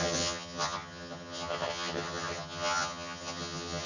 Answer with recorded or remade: remade